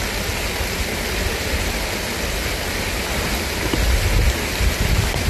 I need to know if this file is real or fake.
real